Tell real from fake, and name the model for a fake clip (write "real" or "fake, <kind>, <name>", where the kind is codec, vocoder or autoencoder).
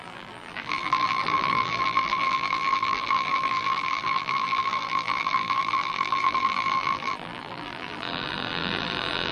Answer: fake, vocoder, BigVGAN v2